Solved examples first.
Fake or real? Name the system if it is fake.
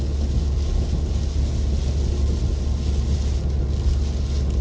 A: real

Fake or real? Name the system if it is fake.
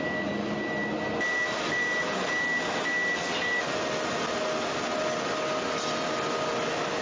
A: real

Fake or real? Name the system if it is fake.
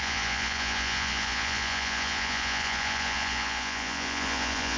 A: fake, vocoder, Vocos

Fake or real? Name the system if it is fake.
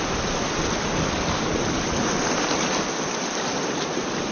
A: real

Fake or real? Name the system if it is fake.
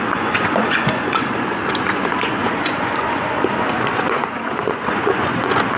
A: fake, vocoder, Vocos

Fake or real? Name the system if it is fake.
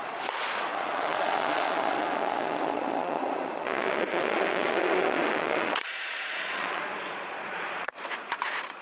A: fake, vocoder, Vocos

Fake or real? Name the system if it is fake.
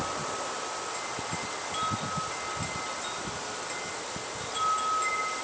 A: real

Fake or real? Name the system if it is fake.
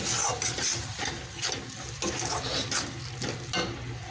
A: real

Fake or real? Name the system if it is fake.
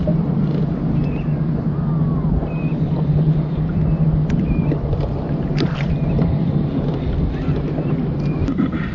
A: real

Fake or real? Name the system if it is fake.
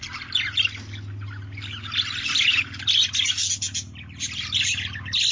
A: real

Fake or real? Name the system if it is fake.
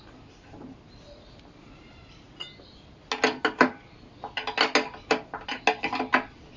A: real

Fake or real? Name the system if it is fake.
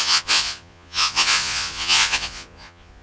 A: fake, vocoder, Vocos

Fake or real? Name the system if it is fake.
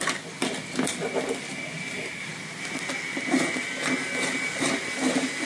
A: real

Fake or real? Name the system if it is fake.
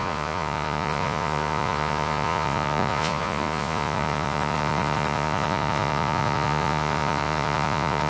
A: fake, vocoder, Vocos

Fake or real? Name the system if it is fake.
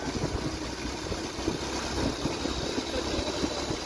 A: real